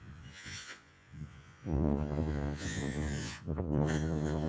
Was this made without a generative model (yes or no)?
no